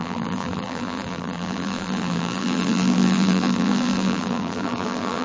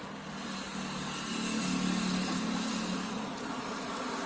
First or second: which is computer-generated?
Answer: first